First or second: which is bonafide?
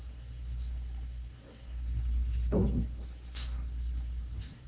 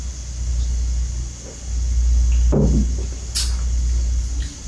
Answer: second